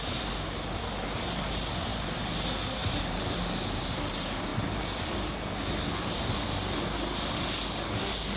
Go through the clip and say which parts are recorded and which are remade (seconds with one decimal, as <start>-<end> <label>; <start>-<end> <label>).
0.0-8.4 recorded